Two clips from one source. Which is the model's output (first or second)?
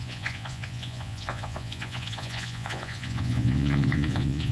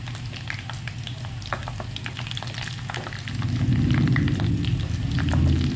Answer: first